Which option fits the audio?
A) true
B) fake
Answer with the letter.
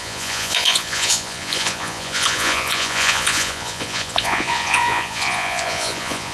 B